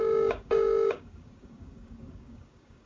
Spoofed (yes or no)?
yes